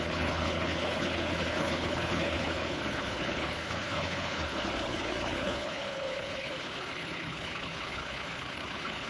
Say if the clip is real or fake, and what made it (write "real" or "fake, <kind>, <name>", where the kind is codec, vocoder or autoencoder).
fake, codec, HILCodec